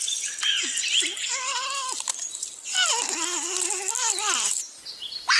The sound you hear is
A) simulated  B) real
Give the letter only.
B